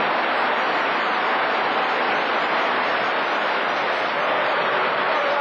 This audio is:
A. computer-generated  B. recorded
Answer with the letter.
B